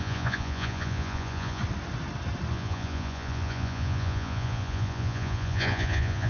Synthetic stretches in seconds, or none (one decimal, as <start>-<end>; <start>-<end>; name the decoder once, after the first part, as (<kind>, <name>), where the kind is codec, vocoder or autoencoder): 0.0-1.6 (vocoder, Vocos); 2.5-6.3